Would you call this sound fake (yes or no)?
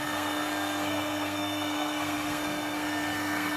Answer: yes